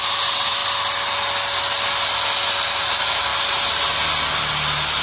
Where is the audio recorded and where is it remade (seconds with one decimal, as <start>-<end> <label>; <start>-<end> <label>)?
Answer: 0.0-5.0 recorded